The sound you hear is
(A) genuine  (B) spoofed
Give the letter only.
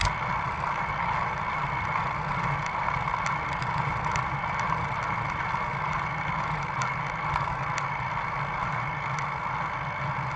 A